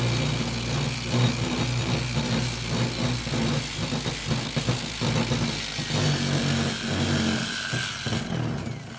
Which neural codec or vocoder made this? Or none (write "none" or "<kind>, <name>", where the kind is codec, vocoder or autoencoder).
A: none